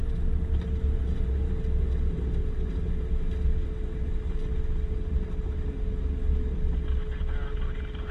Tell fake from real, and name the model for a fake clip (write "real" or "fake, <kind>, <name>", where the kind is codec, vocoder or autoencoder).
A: real